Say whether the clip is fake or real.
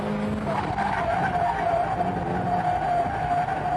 real